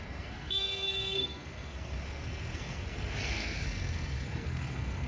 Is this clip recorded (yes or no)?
no